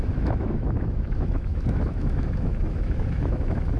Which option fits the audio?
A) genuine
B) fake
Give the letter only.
B